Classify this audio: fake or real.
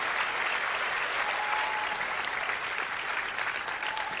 real